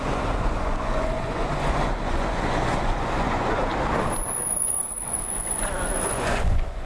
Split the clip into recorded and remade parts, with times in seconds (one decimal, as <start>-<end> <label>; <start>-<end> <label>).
0.0-3.7 remade; 3.7-5.0 recorded; 5.0-6.9 remade